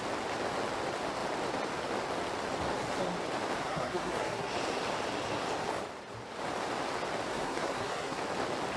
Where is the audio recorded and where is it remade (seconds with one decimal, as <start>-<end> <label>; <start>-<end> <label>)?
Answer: 0.0-3.6 recorded; 3.6-4.5 remade; 4.5-7.3 recorded; 7.3-8.2 remade; 8.2-8.8 recorded